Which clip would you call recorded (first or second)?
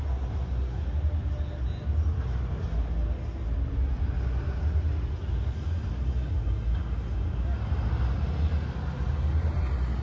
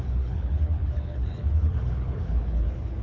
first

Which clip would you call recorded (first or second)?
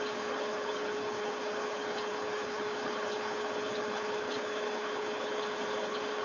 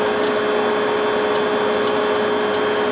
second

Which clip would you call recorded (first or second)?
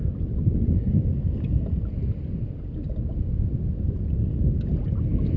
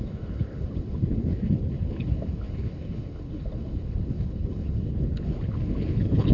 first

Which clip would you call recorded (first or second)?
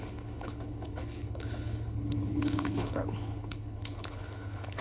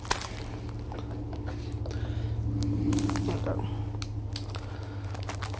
second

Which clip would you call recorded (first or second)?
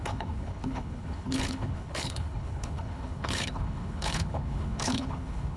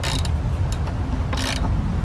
second